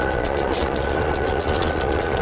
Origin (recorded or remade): remade